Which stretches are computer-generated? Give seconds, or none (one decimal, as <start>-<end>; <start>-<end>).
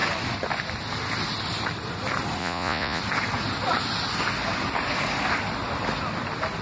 2.4-3.0